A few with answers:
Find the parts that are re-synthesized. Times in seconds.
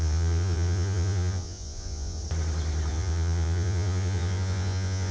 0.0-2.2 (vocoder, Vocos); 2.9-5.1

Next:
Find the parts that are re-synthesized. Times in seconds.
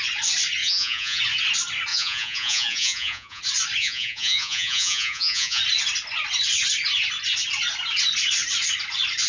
0.6-1.2 (vocoder, Vocos); 1.9-3.4; 3.8-5.6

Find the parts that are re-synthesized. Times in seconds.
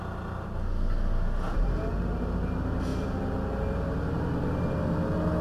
none